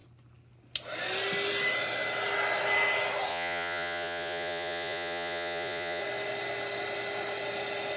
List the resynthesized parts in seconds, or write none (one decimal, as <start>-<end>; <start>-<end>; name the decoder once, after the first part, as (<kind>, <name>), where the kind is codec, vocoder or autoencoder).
3.3-6.0 (vocoder, Vocos)